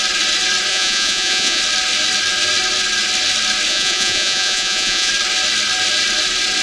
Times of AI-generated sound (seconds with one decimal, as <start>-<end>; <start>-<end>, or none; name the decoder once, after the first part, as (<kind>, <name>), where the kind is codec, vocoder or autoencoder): 0.7-1.6 (vocoder, Vocos); 3.7-5.1